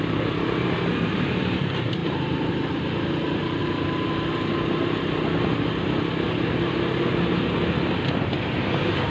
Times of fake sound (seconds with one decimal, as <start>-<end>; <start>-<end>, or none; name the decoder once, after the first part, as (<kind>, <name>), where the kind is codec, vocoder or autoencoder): 0.0-3.6 (vocoder, BigVGAN v2); 7.9-9.1